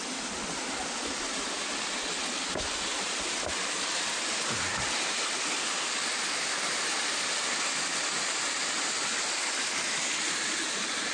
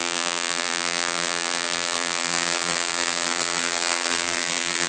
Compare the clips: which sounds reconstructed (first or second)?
second